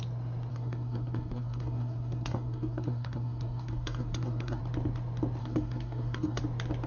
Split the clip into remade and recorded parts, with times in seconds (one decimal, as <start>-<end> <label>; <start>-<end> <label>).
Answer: 0.0-0.5 recorded; 0.5-4.6 remade; 4.6-5.4 recorded; 5.4-6.4 remade; 6.4-6.9 recorded